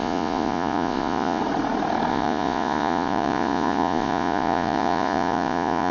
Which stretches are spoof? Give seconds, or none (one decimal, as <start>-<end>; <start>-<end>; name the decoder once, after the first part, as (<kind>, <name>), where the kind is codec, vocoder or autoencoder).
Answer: 0.0-1.4 (vocoder, Vocos); 2.1-5.9